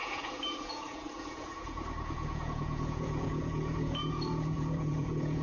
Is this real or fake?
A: fake